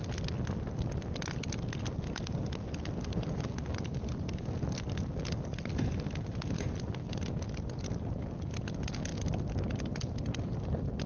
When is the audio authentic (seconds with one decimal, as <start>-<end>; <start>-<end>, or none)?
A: 0.0-11.1